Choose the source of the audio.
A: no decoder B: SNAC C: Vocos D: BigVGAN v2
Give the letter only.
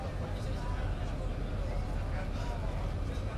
A